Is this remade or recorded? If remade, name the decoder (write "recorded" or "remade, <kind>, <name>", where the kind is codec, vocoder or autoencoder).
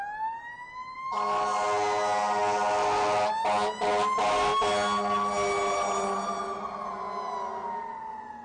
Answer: recorded